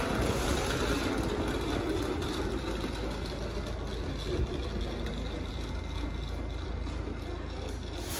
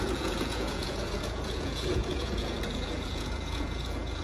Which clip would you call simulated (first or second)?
second